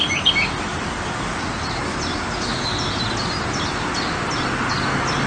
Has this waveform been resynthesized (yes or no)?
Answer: no